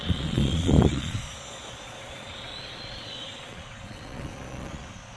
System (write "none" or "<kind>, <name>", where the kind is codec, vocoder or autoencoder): vocoder, Vocos